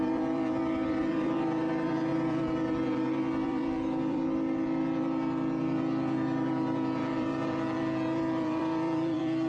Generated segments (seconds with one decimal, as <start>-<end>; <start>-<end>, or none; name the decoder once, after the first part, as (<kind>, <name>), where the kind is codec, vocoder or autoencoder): 0.0-9.5 (vocoder, BigVGAN v2)